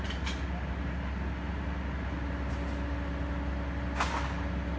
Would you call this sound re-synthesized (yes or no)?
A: no